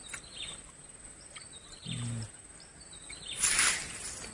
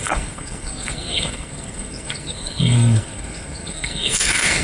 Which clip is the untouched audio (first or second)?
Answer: first